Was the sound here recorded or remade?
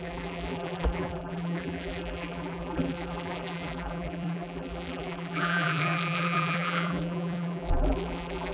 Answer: remade